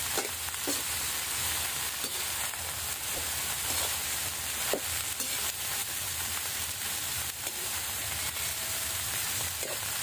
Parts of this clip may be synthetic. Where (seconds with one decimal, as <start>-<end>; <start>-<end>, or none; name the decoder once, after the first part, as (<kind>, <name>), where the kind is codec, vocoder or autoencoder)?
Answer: 5.8-10.0 (vocoder, BigVGAN v2)